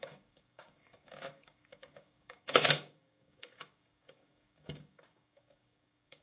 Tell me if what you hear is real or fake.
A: fake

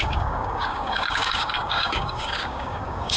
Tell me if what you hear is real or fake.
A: fake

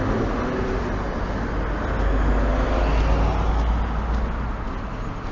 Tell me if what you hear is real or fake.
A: real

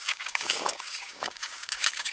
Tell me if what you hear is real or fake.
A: fake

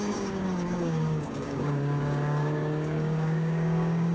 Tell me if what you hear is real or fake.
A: fake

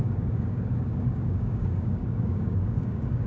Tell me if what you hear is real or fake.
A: fake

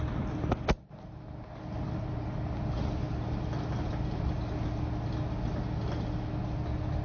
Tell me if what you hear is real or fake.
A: real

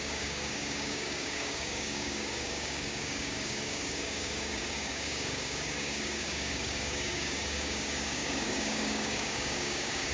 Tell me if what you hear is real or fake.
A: fake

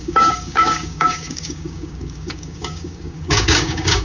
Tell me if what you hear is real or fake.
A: fake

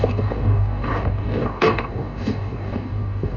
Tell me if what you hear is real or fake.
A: fake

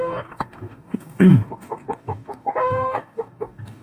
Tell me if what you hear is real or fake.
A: fake